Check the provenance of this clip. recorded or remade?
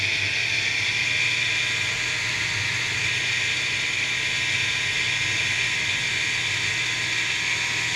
recorded